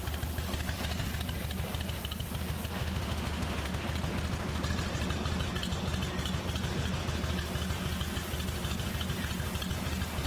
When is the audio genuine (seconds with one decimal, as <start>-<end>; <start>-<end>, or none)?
0.0-2.8; 3.8-10.3